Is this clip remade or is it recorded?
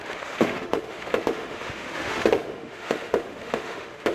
remade